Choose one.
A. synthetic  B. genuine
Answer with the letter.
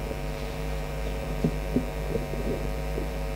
A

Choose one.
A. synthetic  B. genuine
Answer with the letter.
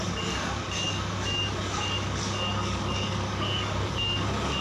A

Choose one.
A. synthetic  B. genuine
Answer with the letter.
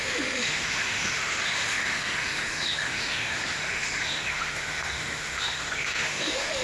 A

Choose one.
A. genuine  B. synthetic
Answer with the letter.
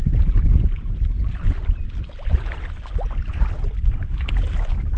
A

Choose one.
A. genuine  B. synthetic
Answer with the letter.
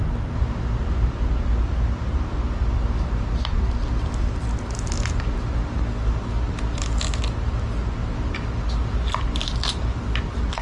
A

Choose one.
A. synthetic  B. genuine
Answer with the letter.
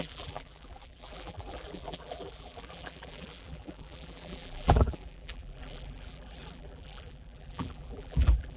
A